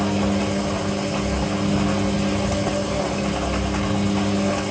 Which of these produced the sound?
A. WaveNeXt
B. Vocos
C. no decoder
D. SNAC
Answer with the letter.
C